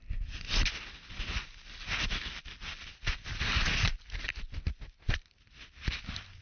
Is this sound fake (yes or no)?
no